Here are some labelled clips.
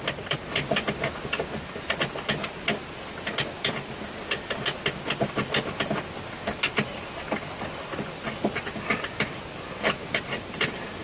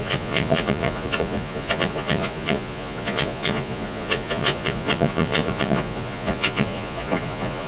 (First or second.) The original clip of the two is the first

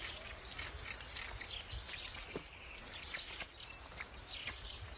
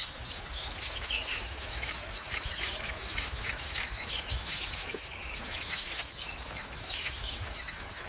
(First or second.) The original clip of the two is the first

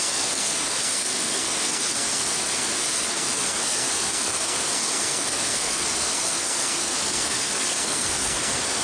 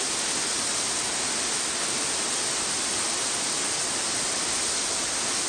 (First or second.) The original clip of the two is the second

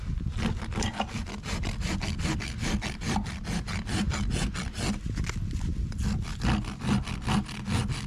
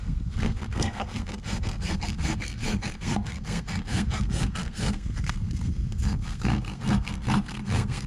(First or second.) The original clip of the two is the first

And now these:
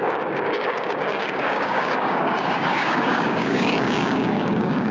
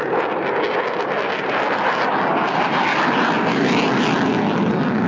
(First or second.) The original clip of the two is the second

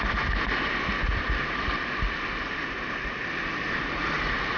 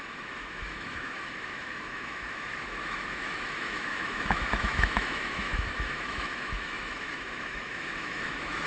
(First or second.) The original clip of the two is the first